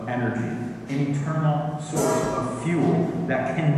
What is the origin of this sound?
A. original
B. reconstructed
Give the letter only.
A